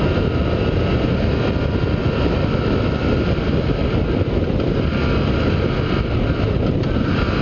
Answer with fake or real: real